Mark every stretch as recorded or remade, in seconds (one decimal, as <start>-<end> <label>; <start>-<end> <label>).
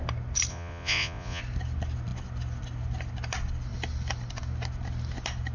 0.0-0.5 recorded; 0.5-1.4 remade; 1.4-5.5 recorded